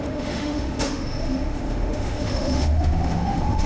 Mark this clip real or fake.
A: fake